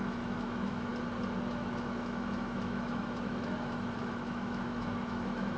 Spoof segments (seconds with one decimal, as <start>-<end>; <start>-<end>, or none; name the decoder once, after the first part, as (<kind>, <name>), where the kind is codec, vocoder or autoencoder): 0.0-0.9 (autoencoder, DAC-VAE); 1.5-5.6

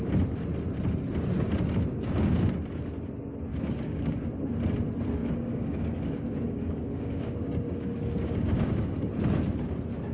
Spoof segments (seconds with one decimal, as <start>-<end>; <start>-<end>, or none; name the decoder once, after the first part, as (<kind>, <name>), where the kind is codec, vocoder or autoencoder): 1.9-2.5 (codec, DAC); 3.5-4.3; 5.2-9.1

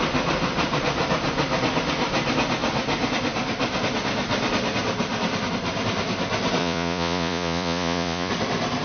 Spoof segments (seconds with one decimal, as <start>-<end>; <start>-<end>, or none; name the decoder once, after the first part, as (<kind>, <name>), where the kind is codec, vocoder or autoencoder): 6.6-8.3 (vocoder, Vocos)